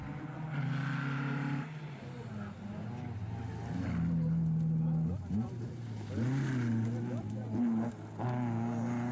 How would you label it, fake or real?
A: real